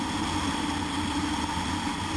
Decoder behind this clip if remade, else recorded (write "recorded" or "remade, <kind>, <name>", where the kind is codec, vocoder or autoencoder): recorded